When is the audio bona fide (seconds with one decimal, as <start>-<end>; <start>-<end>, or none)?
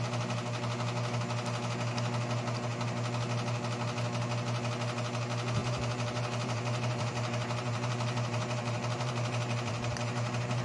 0.0-5.6